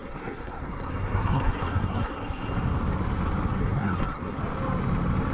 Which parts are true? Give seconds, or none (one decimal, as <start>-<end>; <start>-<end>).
2.5-3.6; 4.4-5.3